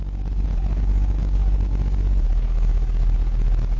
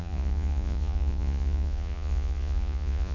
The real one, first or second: first